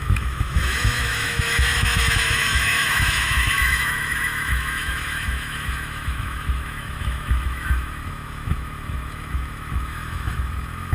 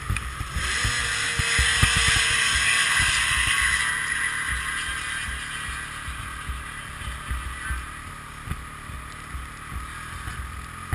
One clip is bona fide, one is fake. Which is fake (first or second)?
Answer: first